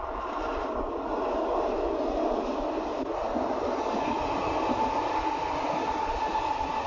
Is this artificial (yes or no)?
no